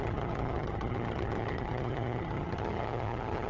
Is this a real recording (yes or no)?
no